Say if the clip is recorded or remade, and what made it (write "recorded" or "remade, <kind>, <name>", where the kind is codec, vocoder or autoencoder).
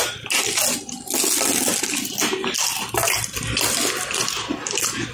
recorded